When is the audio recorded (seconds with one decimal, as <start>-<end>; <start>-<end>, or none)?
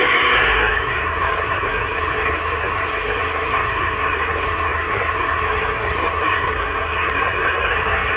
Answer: none